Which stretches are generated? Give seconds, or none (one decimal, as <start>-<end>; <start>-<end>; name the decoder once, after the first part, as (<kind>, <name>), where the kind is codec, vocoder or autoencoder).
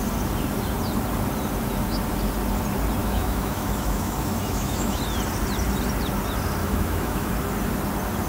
3.0-5.0 (autoencoder, DAC-VAE); 6.6-7.3